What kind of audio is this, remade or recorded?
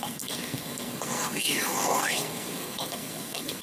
remade